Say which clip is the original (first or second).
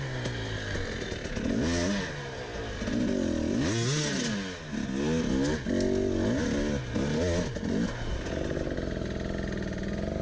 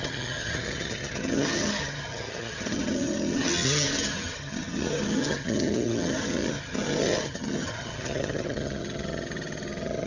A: first